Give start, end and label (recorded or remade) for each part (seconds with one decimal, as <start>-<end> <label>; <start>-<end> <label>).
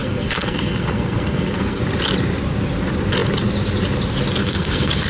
0.0-1.8 remade; 1.8-4.4 recorded; 4.4-5.1 remade